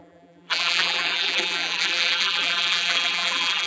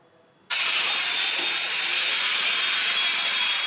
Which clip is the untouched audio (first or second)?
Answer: second